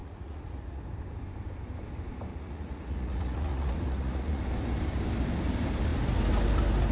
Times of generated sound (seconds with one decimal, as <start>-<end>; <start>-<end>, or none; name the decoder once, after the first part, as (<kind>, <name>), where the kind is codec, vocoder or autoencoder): 0.0-0.8 (vocoder, Vocos); 2.3-4.4